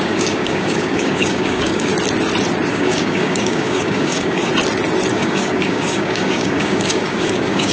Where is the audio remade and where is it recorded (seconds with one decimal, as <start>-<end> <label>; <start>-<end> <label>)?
0.0-1.9 remade; 1.9-2.7 recorded; 2.7-4.5 remade; 4.5-5.1 recorded; 5.1-7.7 remade